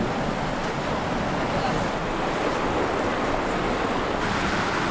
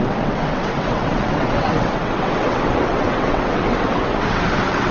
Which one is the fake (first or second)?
second